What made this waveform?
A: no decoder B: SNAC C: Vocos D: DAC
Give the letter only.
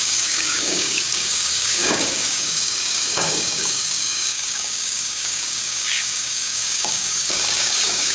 D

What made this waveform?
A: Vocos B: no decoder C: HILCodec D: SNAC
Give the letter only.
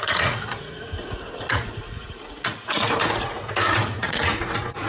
A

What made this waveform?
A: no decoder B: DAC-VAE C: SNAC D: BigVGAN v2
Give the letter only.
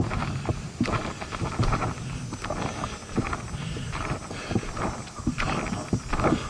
A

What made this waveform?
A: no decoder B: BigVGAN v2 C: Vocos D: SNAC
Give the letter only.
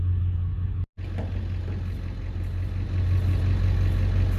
A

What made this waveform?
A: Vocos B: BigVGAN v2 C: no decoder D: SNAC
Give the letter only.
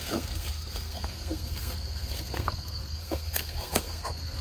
D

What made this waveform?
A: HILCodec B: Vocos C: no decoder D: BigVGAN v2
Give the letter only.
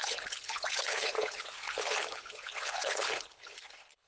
A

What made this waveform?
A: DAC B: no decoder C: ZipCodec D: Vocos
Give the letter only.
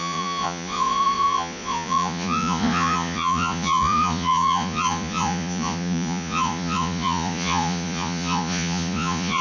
D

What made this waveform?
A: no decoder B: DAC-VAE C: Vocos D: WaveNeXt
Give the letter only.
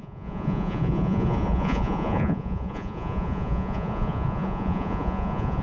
C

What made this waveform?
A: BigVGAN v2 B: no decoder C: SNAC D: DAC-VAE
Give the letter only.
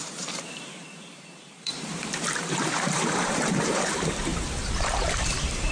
A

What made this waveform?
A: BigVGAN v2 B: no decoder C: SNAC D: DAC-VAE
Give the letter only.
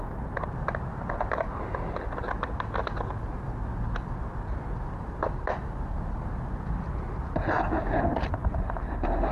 B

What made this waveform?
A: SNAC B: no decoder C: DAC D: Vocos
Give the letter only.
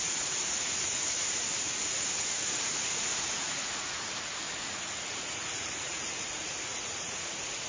D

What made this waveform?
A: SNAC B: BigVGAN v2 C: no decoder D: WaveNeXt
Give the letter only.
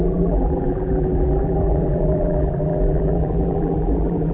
B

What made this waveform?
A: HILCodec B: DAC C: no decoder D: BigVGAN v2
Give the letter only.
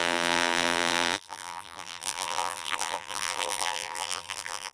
D